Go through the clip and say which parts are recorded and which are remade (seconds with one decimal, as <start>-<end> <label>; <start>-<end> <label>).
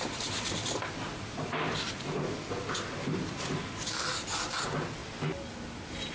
0.0-6.1 recorded